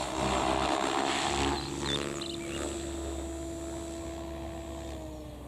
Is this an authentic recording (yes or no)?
yes